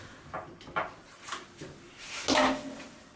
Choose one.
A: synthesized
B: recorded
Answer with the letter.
B